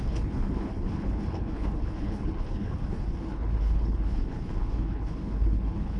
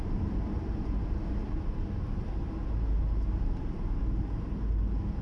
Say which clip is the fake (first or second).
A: first